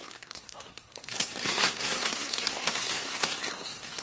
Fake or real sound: fake